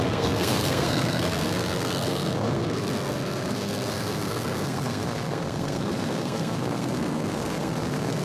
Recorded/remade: remade